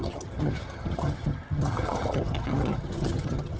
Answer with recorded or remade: remade